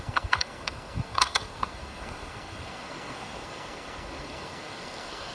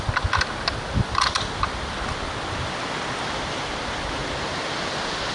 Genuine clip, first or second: second